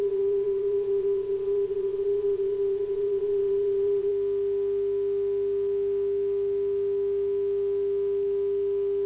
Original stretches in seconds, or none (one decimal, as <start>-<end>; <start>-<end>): 4.1-9.1